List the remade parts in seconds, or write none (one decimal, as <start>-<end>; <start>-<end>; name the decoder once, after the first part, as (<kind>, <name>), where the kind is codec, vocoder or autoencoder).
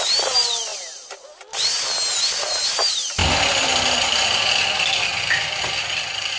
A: none